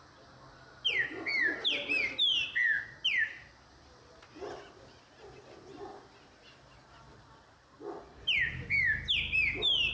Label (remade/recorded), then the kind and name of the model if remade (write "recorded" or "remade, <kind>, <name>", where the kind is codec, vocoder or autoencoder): recorded